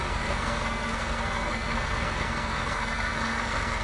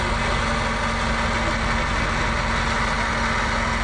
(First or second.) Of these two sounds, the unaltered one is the second